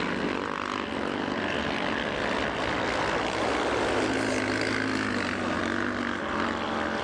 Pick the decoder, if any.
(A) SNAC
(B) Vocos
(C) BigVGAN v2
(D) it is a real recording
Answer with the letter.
D